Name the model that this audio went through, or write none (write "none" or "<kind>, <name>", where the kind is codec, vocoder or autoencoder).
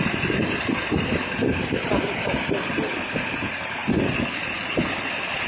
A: none